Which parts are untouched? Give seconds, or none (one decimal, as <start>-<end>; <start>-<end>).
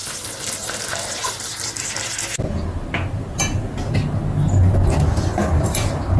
0.0-6.2